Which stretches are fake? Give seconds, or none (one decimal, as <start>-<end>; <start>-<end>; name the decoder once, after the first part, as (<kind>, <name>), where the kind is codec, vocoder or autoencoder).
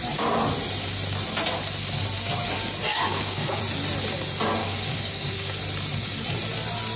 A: 2.9-3.6 (codec, DAC); 4.6-5.6